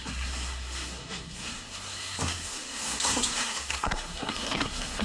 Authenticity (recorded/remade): remade